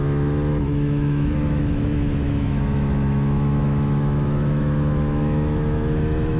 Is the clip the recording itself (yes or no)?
no